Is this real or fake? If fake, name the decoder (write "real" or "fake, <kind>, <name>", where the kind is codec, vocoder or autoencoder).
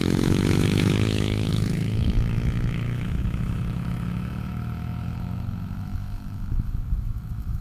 fake, autoencoder, DAC-VAE